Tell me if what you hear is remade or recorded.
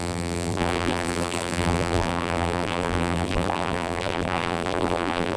remade